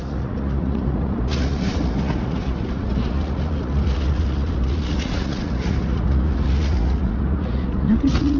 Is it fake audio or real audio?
fake